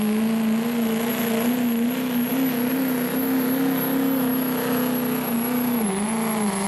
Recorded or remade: recorded